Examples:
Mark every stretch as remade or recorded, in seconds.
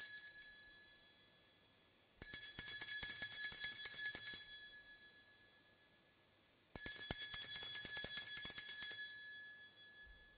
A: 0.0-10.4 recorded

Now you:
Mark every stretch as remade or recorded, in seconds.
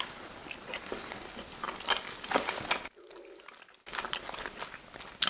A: 0.0-5.3 recorded